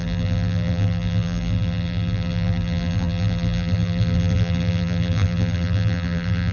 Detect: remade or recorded remade